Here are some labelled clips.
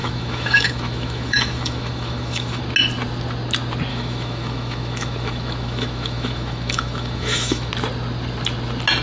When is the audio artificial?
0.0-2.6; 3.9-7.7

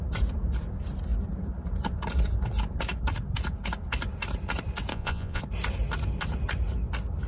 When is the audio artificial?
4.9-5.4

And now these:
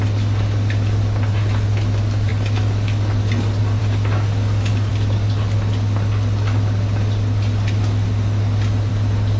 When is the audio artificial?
none